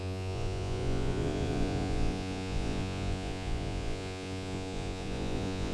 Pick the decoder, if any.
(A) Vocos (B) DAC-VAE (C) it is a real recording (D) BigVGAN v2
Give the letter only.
A